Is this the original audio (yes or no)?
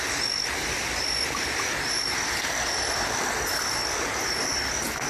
yes